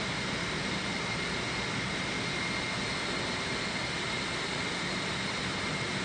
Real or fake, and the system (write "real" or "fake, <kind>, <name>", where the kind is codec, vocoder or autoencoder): real